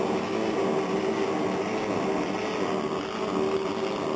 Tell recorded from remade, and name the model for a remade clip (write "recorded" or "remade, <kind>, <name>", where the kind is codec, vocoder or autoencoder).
recorded